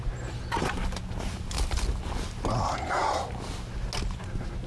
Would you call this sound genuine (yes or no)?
yes